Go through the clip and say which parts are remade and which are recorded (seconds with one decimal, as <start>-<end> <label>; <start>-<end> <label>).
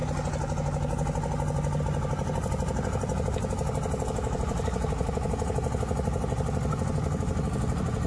0.0-8.1 recorded